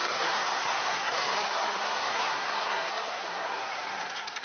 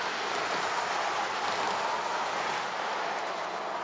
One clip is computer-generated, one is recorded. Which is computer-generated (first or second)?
first